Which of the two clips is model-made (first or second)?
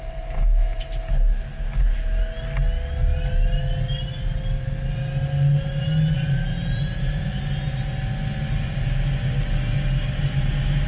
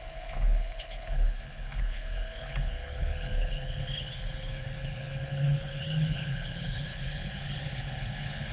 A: second